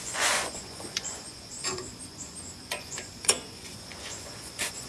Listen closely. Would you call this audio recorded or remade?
remade